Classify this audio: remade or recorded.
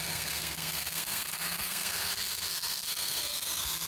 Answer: remade